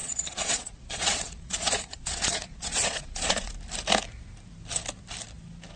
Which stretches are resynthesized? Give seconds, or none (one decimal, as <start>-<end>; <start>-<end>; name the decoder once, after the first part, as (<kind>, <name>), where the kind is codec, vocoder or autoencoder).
0.0-3.5 (vocoder, Vocos)